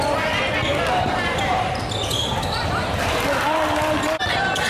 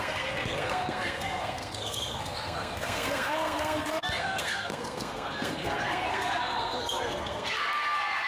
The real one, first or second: first